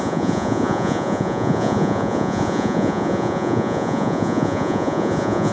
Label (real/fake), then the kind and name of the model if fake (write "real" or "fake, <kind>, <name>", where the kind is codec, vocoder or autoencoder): fake, vocoder, Vocos